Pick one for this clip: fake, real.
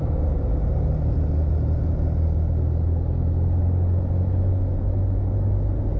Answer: real